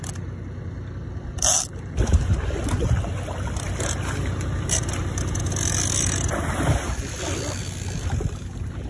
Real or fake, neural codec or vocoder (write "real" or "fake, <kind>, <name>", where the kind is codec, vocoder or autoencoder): real